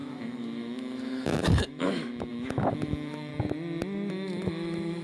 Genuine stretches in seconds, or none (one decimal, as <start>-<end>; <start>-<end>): 3.3-4.1